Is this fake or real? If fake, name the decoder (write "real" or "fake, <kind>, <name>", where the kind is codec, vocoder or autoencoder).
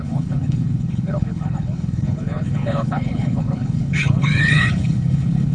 fake, codec, HILCodec